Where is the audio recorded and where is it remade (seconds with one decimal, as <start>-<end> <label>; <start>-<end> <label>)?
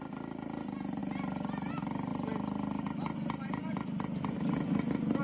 0.0-5.2 recorded